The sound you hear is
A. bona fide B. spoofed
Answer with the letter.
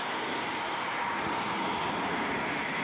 A